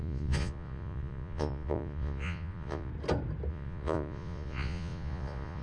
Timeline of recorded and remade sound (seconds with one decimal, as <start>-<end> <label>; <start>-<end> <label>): 0.0-2.9 remade; 2.9-3.5 recorded; 3.5-5.6 remade